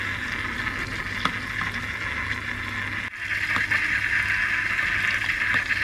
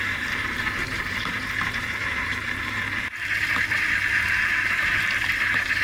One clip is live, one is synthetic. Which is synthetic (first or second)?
second